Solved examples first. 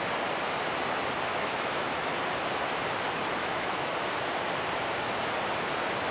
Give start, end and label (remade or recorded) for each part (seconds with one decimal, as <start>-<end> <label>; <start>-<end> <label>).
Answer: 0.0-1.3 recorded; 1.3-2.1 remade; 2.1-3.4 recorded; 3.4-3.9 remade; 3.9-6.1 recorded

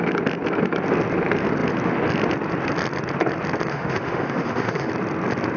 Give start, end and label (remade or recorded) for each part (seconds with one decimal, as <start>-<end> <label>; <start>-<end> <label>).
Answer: 0.0-3.7 recorded; 3.7-4.9 remade; 4.9-5.6 recorded

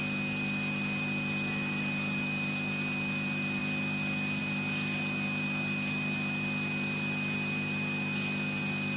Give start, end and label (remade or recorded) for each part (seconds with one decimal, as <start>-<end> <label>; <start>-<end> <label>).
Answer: 0.0-9.0 recorded

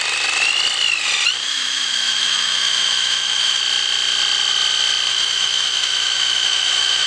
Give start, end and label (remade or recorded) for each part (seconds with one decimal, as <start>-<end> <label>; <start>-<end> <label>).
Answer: 0.0-1.4 recorded; 1.4-3.6 remade; 3.6-5.1 recorded; 5.1-7.1 remade

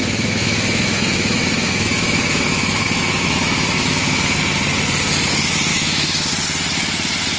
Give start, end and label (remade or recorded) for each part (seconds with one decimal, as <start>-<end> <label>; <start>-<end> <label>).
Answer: 0.0-4.4 remade; 4.4-5.7 recorded; 5.7-6.3 remade; 6.3-7.4 recorded

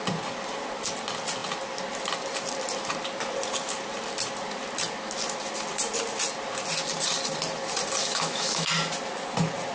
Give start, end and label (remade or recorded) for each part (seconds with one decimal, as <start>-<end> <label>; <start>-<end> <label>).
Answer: 0.0-8.0 recorded; 8.0-8.7 remade; 8.7-9.7 recorded

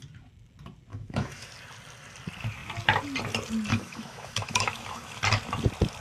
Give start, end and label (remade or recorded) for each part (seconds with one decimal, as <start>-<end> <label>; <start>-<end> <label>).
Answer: 0.0-0.9 recorded; 0.9-1.5 remade; 1.5-3.7 recorded; 3.7-5.2 remade; 5.2-6.0 recorded